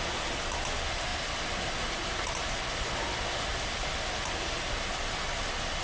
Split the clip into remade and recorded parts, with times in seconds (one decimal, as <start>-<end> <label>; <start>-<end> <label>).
0.0-5.8 recorded